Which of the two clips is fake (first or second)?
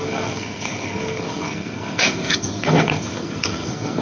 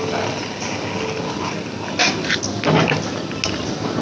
first